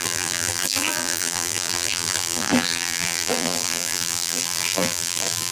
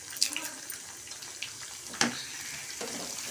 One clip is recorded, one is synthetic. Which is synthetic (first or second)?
first